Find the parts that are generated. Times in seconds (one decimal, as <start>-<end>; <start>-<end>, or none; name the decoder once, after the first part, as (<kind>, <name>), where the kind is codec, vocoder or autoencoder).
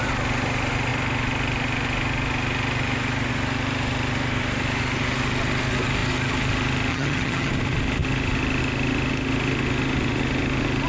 6.9-7.5 (vocoder, HiFi-GAN)